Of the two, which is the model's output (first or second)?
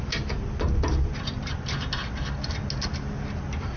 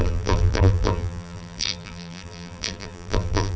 second